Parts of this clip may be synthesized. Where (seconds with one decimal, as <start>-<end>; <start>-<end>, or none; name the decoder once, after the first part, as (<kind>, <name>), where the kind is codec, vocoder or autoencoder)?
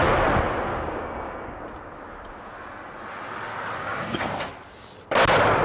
0.7-1.6 (codec, DAC); 3.8-4.5